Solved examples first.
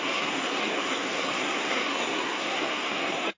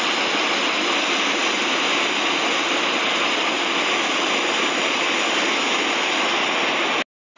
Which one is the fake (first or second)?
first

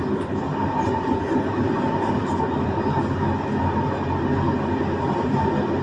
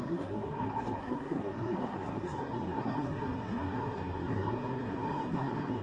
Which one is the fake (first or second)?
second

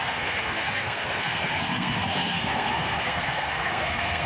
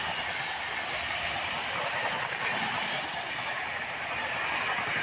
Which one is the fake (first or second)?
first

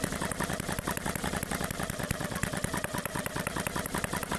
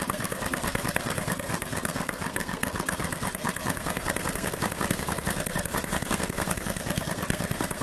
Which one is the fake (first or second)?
second